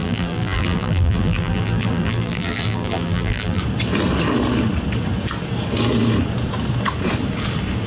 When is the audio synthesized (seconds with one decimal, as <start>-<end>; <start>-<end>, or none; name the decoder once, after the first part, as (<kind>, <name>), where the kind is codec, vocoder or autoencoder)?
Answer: 0.0-3.6 (vocoder, BigVGAN v2)

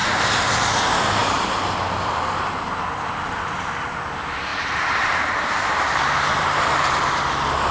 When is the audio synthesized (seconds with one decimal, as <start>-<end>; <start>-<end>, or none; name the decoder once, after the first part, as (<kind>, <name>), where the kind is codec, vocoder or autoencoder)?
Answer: 0.0-0.7 (vocoder, BigVGAN v2); 1.2-2.2; 4.5-7.1

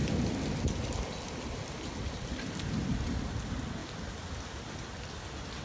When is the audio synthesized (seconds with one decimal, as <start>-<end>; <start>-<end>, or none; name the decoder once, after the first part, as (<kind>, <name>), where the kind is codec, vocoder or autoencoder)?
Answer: 0.0-3.4 (vocoder, BigVGAN v2); 3.8-4.3

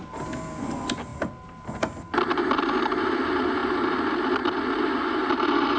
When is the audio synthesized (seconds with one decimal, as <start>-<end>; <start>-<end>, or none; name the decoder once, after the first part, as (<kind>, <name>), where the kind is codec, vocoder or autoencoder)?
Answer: none

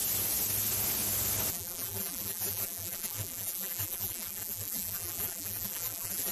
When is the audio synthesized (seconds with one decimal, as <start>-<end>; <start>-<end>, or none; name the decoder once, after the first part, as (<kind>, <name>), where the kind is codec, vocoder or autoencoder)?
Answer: 1.5-6.3 (vocoder, BigVGAN v2)

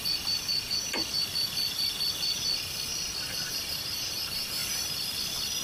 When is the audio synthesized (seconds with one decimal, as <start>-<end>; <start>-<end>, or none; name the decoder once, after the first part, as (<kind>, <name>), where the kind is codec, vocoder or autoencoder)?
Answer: 0.0-0.5 (vocoder, BigVGAN v2); 3.5-4.6

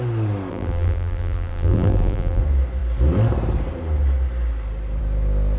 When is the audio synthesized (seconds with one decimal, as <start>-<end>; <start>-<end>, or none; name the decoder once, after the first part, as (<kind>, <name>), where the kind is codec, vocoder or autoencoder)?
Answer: 0.5-2.4 (vocoder, BigVGAN v2)